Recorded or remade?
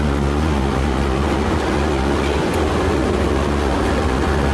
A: remade